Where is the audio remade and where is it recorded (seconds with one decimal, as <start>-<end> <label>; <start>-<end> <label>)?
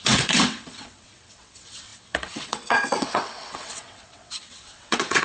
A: 0.0-5.2 remade